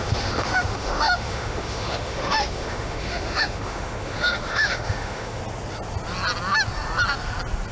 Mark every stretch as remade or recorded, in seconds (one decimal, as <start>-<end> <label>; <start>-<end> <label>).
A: 0.0-5.4 remade; 5.4-7.7 recorded